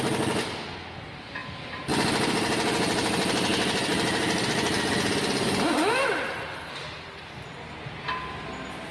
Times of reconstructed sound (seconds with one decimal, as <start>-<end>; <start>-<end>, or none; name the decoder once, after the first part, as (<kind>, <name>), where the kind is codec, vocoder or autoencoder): none